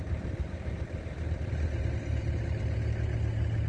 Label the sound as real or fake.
real